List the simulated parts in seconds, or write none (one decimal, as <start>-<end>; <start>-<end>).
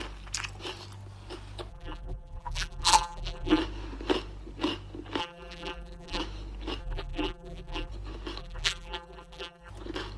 1.7-3.6; 5.2-6.2; 6.8-7.9; 8.4-9.7